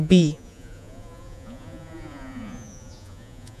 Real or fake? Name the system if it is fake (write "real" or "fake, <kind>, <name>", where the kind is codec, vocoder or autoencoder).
fake, vocoder, Vocos